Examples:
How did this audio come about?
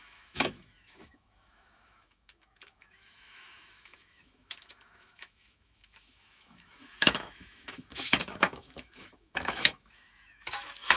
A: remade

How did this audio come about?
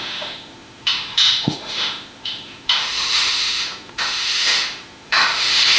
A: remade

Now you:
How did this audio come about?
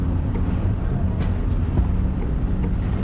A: recorded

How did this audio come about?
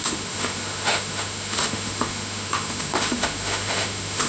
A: remade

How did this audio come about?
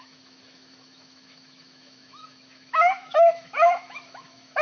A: remade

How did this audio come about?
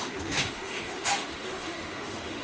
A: remade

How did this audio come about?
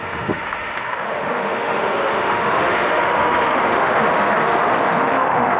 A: remade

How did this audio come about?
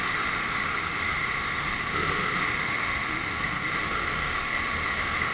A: remade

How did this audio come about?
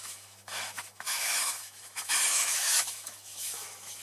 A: remade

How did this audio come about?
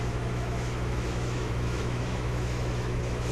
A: remade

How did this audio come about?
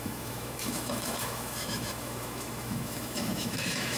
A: remade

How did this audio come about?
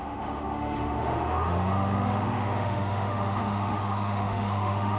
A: remade